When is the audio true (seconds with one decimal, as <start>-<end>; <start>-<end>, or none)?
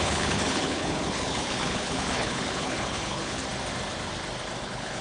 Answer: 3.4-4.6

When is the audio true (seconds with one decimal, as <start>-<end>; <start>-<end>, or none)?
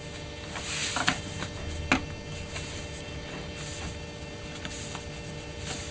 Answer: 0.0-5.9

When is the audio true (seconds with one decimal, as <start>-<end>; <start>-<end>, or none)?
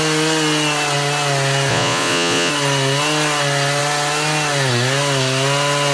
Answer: 0.0-1.7; 2.5-5.9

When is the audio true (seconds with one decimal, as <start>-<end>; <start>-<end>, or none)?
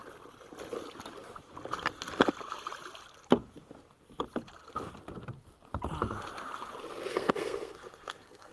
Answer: 0.0-7.1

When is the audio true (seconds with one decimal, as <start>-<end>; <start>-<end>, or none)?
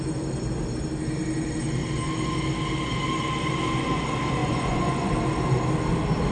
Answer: 0.0-4.4; 5.1-6.3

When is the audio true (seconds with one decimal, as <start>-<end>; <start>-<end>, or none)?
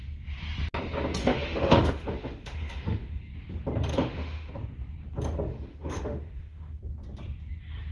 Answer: 0.0-1.2; 3.2-3.9; 4.5-5.5; 6.8-7.9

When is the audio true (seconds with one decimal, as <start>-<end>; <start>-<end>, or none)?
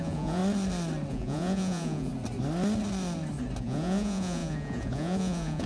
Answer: 0.4-1.1; 2.1-3.6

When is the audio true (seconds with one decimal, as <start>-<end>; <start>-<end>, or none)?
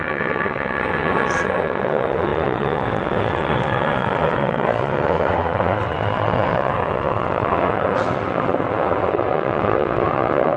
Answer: none